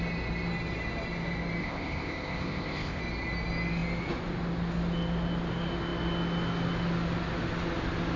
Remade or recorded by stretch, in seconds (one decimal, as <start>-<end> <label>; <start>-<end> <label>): 0.0-1.6 recorded; 1.6-3.0 remade; 3.0-8.2 recorded